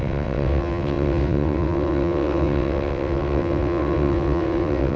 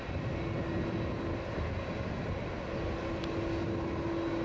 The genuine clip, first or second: second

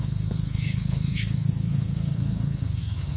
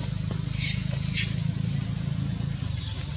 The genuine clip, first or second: second